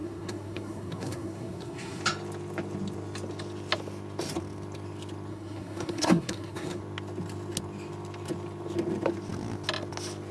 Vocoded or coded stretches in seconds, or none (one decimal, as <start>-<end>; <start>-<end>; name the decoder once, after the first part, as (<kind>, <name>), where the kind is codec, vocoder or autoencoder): 0.0-2.0 (codec, SNAC); 5.3-6.8